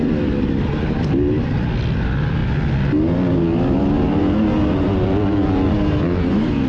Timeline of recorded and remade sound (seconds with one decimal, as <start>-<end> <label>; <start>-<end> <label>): 0.0-6.7 recorded